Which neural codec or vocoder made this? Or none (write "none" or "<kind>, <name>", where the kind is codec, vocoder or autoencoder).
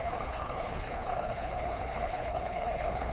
codec, HILCodec